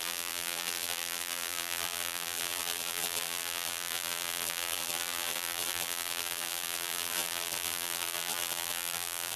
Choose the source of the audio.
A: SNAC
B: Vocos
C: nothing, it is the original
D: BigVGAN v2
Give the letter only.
D